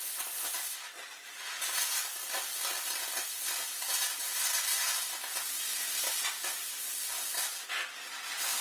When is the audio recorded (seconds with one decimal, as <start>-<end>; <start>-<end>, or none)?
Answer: 0.0-8.6